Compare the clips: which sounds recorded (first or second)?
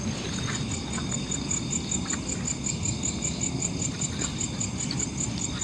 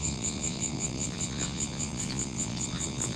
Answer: first